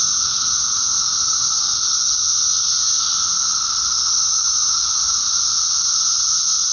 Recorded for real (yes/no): yes